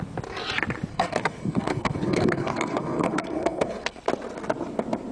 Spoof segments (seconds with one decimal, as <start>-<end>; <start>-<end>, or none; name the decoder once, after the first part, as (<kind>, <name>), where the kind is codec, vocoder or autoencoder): 0.9-4.0 (codec, SNAC)